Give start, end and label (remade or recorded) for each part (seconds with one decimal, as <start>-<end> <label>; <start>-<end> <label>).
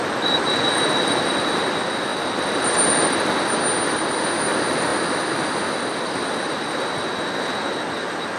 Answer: 0.0-8.4 recorded